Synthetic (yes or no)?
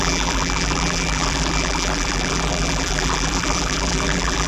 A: yes